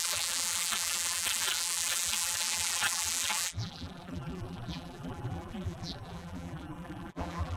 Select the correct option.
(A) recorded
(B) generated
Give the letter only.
B